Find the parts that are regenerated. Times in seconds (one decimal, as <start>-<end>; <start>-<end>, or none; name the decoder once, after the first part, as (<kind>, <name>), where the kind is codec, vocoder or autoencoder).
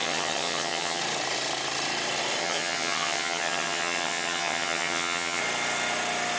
0.0-1.0 (vocoder, HiFi-GAN); 2.4-5.4